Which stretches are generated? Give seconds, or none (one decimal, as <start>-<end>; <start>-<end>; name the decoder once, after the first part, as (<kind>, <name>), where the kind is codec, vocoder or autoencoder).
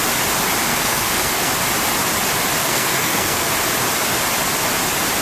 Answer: 0.7-1.5 (codec, SNAC); 2.6-3.5